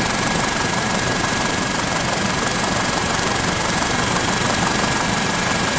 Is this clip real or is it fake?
fake